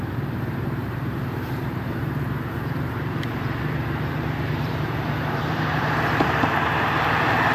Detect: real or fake fake